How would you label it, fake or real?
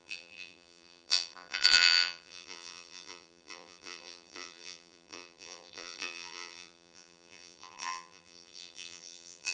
fake